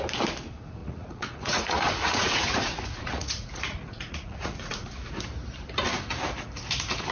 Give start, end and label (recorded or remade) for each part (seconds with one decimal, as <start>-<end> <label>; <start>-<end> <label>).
0.0-0.8 recorded; 0.8-5.1 remade; 5.1-7.1 recorded